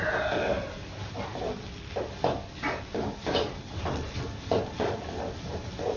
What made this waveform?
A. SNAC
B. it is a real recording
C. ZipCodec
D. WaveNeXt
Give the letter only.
B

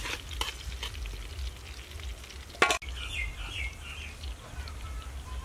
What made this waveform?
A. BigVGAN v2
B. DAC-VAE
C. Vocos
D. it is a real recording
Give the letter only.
D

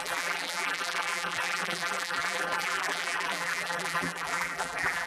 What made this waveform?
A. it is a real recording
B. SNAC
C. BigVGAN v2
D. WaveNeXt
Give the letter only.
C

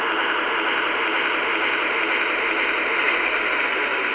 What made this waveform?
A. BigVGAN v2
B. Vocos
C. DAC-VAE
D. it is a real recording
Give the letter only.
D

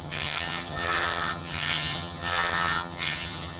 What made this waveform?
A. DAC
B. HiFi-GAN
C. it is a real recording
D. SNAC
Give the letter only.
B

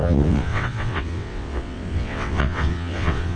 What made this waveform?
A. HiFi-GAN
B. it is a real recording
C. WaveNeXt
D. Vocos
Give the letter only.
C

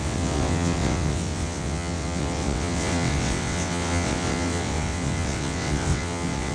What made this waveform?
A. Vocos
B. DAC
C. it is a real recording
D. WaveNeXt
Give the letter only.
D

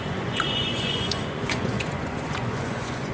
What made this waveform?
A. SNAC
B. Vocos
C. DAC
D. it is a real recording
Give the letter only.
B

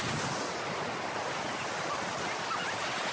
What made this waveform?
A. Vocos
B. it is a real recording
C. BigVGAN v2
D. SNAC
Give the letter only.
B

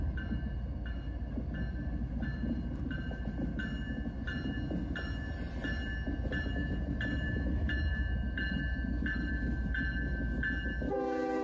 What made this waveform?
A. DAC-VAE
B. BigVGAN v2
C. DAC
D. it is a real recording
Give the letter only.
D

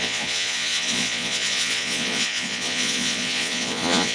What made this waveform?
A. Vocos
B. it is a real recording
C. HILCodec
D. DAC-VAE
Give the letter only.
A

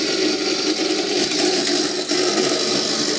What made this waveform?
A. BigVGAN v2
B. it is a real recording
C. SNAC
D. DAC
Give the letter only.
B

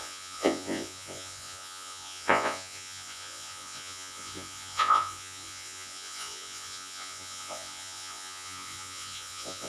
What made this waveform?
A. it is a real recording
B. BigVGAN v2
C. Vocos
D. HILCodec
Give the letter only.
C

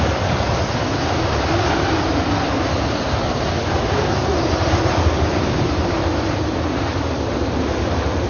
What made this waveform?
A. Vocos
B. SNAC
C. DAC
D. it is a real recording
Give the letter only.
D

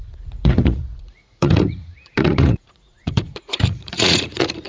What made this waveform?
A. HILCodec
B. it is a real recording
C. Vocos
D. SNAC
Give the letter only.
C